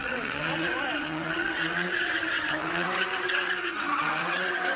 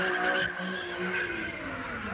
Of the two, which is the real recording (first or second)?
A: second